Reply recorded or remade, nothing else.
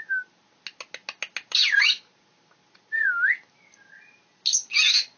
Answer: recorded